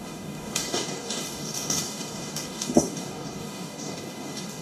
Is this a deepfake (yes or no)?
yes